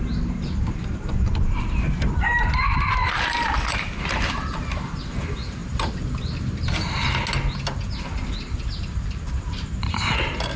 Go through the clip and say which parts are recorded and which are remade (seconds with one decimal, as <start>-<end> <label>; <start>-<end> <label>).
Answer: 0.0-5.6 remade; 5.6-8.4 recorded; 8.4-10.6 remade